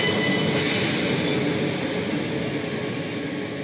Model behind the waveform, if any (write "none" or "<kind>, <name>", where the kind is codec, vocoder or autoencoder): none